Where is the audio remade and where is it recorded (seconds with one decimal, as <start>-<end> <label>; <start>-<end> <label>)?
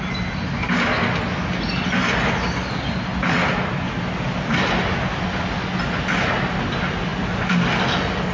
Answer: 0.0-8.3 recorded